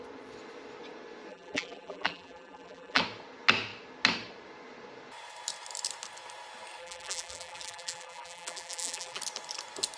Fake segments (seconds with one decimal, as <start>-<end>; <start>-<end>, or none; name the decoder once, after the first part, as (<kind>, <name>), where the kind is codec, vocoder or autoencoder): 1.3-3.0 (vocoder, BigVGAN v2); 6.8-9.2